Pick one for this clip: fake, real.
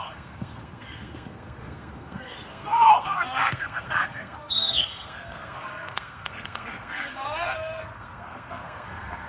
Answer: fake